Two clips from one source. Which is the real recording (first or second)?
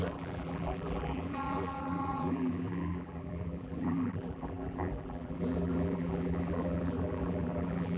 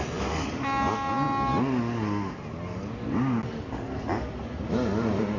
second